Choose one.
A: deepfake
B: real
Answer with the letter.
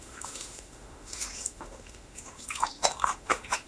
A